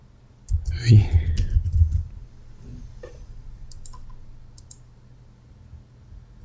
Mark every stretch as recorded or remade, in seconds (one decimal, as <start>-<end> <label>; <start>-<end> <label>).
0.0-6.4 recorded